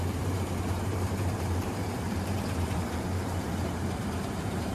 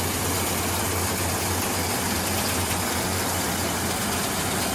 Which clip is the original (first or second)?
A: second